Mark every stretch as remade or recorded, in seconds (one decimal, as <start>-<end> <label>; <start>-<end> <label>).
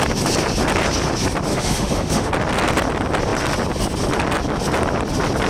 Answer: 0.0-1.5 recorded; 1.5-2.3 remade; 2.3-5.5 recorded